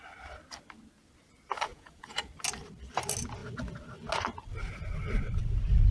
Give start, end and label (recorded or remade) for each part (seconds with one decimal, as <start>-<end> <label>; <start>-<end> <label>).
0.0-1.7 recorded; 1.7-2.3 remade; 2.3-5.9 recorded